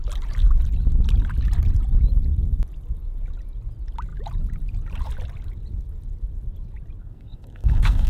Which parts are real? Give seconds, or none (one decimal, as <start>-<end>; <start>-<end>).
0.0-7.0